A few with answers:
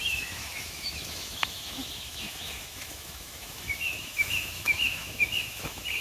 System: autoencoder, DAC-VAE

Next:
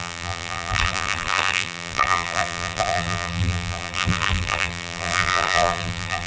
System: vocoder, BigVGAN v2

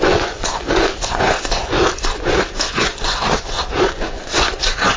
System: vocoder, Vocos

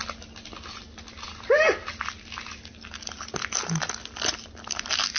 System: none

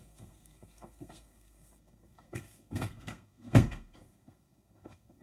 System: codec, SNAC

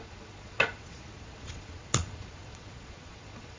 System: vocoder, Vocos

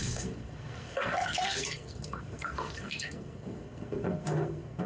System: codec, SNAC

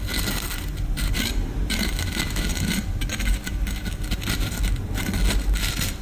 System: none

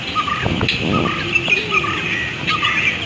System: none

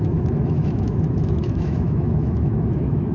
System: autoencoder, DAC-VAE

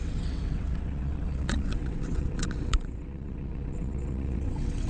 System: vocoder, WaveNeXt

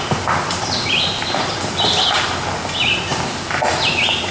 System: none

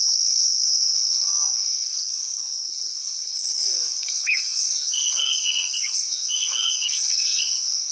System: codec, SNAC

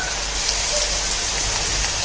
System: none